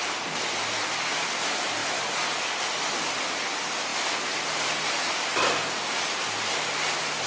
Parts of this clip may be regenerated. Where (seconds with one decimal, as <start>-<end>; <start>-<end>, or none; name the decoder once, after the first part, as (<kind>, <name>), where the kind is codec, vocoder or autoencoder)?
none